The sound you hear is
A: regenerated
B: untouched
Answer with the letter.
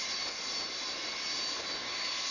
B